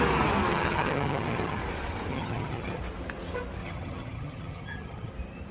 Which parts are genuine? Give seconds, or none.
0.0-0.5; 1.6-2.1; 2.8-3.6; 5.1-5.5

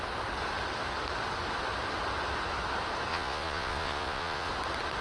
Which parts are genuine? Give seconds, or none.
0.0-3.1; 4.5-5.0

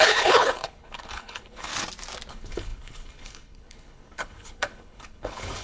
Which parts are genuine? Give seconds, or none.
1.7-2.3

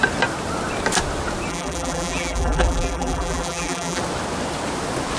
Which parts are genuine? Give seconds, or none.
0.0-1.5; 4.0-5.2

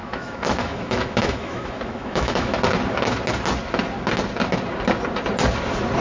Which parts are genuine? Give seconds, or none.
2.6-6.0

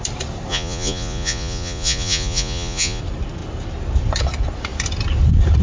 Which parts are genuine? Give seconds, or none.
0.0-0.5; 3.0-5.6